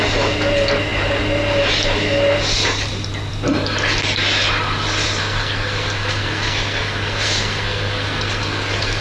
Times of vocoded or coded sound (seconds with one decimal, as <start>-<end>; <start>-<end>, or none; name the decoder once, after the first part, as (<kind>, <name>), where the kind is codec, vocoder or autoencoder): 5.2-9.0 (codec, SNAC)